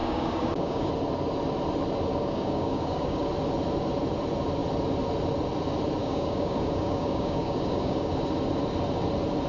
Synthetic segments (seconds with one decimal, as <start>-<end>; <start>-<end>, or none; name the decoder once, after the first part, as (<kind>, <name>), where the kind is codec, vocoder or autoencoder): 0.0-0.9 (codec, DAC); 2.1-3.3; 6.0-8.1